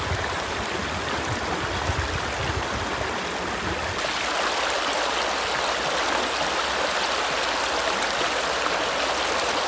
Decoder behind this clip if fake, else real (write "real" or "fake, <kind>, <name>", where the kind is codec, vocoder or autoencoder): real